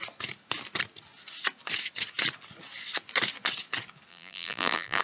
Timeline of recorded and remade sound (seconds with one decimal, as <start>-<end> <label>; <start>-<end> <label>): 0.0-4.1 recorded; 4.1-5.0 remade